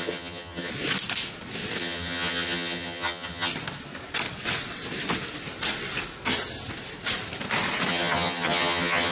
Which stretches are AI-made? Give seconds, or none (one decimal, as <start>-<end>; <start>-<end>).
0.0-0.7; 1.8-3.5; 7.9-9.1